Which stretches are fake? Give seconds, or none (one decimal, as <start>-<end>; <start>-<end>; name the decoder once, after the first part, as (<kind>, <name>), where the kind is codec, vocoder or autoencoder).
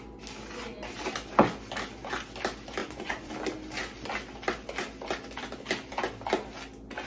2.8-3.3 (vocoder, Vocos)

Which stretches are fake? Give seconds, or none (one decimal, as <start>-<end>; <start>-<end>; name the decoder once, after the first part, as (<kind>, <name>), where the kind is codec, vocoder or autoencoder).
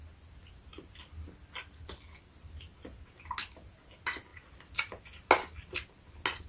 none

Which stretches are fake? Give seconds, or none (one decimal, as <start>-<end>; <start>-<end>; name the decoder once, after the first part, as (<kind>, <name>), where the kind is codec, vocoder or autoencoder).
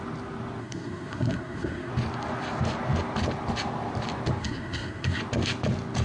0.6-1.9 (codec, SNAC); 4.4-5.2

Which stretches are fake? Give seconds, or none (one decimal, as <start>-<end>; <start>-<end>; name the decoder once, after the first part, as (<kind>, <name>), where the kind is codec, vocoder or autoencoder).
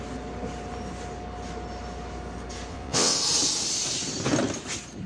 2.7-3.2 (vocoder, WaveNeXt)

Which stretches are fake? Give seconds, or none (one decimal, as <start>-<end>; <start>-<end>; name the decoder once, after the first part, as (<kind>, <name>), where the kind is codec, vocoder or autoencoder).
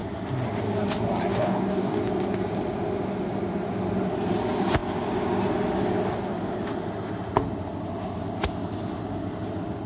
1.3-2.0 (codec, DAC)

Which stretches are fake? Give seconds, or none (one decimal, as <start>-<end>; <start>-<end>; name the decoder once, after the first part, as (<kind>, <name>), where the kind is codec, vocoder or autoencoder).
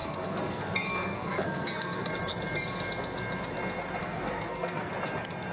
0.0-2.1 (codec, SNAC); 4.0-4.9